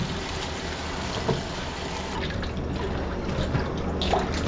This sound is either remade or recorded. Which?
recorded